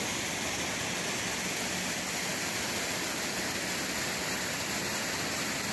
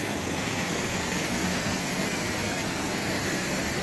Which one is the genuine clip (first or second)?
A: first